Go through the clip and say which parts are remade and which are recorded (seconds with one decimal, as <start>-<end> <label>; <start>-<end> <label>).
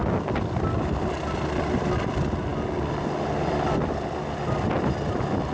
0.0-5.5 recorded